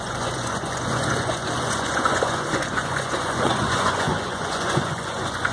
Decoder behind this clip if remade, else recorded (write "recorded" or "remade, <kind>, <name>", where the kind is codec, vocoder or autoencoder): remade, vocoder, Vocos